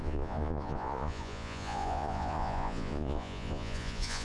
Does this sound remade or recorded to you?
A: remade